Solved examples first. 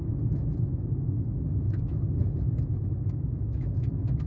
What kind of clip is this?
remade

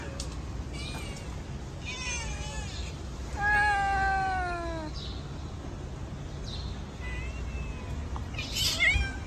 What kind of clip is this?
recorded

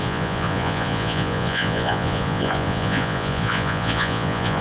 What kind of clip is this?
remade